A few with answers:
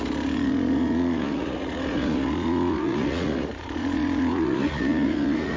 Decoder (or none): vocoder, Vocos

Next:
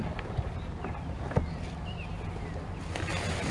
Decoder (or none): none